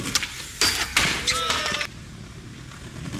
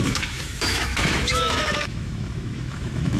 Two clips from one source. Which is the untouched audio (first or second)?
first